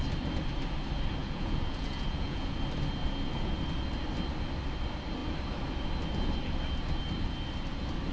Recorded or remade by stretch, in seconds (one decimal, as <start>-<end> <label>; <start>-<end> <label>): 0.0-1.2 recorded; 1.2-2.5 remade; 2.5-8.1 recorded